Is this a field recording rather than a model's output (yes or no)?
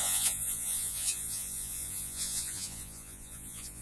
no